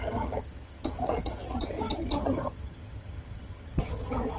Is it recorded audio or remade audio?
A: remade